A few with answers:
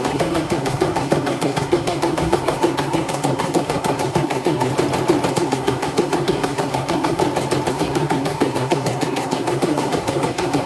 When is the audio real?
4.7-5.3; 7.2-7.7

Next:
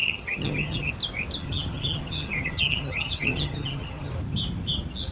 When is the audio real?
0.9-1.4; 4.1-5.1

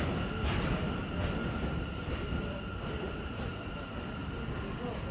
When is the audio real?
0.0-5.1

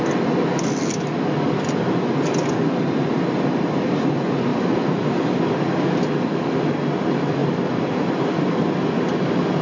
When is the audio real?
0.0-4.5; 5.4-7.4; 8.8-9.6

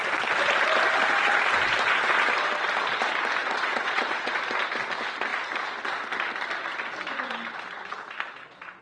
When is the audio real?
0.0-3.4; 4.4-8.8